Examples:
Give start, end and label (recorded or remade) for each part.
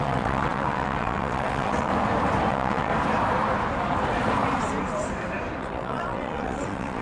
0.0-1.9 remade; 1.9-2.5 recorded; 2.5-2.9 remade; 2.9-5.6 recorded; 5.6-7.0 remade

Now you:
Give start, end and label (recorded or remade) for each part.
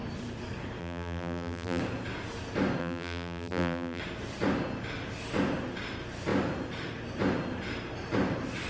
0.0-0.8 recorded; 0.8-1.8 remade; 1.8-2.8 recorded; 2.8-4.0 remade; 4.0-8.7 recorded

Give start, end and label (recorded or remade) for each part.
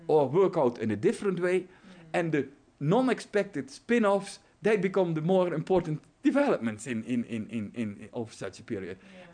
0.0-6.4 recorded; 6.4-8.6 remade; 8.6-9.3 recorded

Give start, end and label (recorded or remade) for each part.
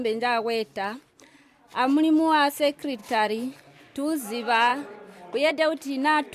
0.0-3.0 recorded; 3.0-3.8 remade; 3.8-6.3 recorded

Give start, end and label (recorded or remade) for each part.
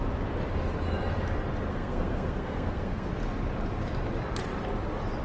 0.0-1.7 recorded; 1.7-3.1 remade; 3.1-5.2 recorded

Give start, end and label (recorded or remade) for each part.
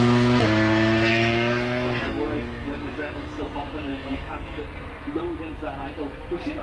0.0-1.1 recorded; 1.1-3.4 remade; 3.4-3.9 recorded; 3.9-4.6 remade; 4.6-6.6 recorded